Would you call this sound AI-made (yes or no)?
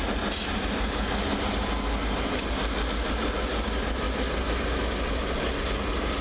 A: no